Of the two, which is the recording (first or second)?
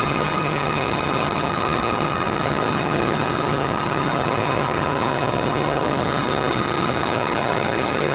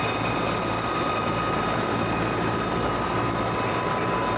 second